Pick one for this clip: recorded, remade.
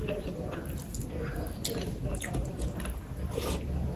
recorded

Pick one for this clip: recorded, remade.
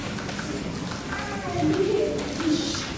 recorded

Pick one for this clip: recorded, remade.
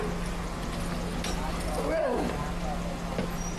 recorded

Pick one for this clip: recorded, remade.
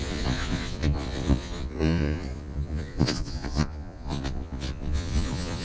remade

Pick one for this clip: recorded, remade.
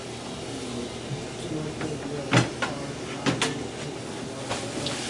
recorded